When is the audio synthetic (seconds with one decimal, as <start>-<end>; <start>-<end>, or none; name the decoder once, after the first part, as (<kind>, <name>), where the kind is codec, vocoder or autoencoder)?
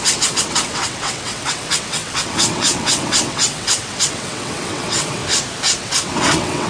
0.0-5.2 (vocoder, WaveNeXt); 5.8-6.7